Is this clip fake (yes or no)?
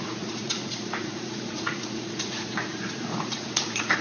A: yes